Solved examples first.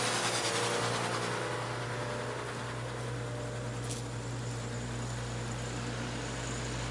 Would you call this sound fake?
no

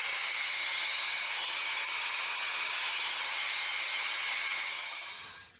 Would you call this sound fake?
yes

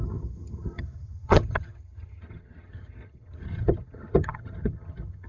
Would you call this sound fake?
yes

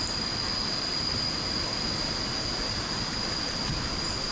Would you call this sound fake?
no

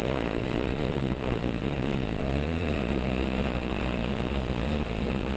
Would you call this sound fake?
yes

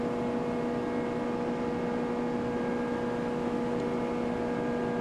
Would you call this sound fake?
no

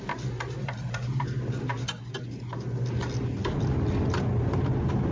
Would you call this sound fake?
no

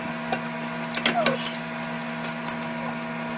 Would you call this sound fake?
no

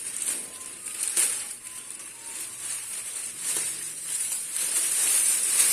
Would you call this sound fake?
yes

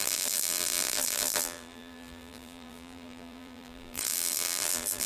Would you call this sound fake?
yes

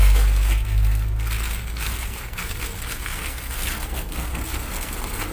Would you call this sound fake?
yes